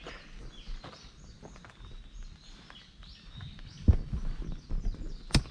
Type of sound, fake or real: real